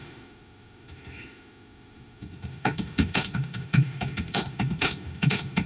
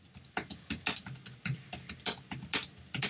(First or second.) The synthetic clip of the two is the first